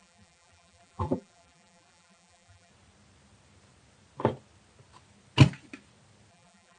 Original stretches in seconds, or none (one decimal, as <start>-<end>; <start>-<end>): 2.7-6.3